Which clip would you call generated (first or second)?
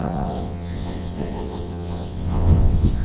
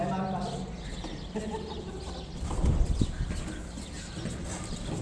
first